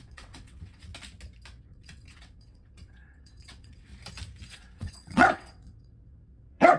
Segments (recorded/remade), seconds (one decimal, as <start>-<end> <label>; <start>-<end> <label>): 0.0-0.9 remade; 0.9-1.6 recorded; 1.6-3.9 remade; 3.9-4.5 recorded; 4.5-6.8 remade